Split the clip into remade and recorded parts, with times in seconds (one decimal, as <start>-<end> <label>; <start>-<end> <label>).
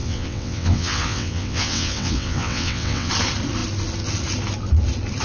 0.0-3.1 remade; 3.1-5.2 recorded